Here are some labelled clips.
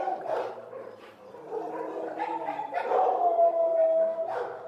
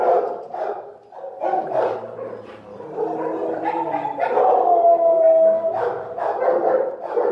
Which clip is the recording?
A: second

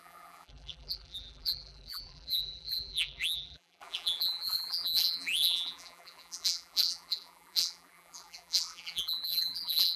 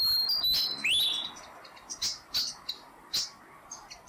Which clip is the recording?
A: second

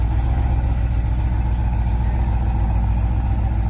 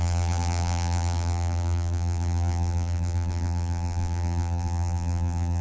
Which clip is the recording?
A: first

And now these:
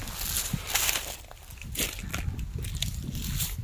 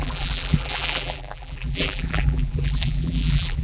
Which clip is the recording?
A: first